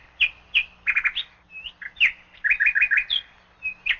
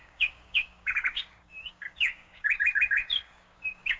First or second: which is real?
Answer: first